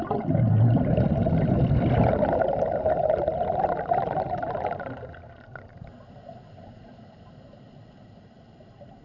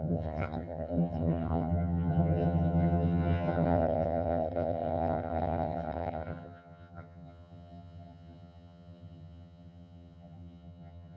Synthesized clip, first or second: second